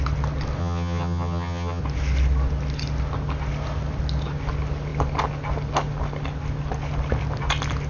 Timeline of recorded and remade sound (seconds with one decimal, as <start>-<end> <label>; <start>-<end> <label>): 0.0-0.6 recorded; 0.6-1.8 remade; 1.8-7.9 recorded